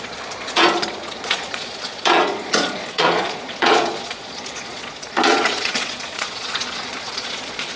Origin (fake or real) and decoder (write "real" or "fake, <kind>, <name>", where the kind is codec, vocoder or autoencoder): fake, vocoder, Vocos